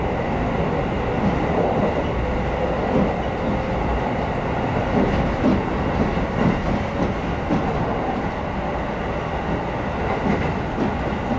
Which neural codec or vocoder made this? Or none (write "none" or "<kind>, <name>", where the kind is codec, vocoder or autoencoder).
none